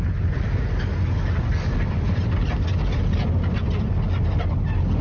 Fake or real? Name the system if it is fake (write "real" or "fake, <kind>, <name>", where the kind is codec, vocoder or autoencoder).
real